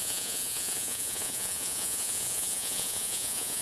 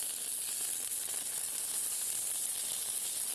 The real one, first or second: second